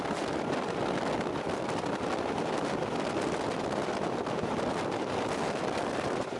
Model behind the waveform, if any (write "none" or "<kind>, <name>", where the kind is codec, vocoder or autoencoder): vocoder, BigVGAN v2